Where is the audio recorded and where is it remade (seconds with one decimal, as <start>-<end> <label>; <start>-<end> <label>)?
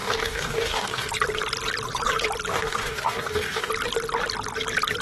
0.0-1.1 remade; 1.1-2.5 recorded; 2.5-3.7 remade; 3.7-5.0 recorded